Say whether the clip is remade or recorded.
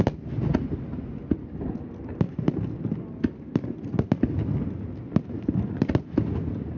recorded